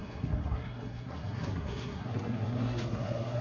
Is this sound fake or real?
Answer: fake